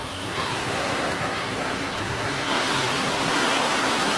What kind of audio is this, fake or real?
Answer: fake